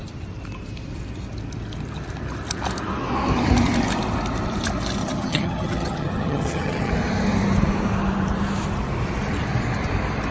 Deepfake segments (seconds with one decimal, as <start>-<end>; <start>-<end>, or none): 5.0-6.9